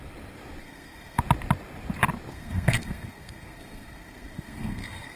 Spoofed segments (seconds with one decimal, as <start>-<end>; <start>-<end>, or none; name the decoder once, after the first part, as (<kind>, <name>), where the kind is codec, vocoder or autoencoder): 0.6-1.2 (codec, SNAC); 2.3-5.2